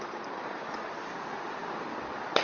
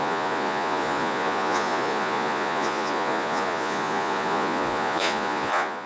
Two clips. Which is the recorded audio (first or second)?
first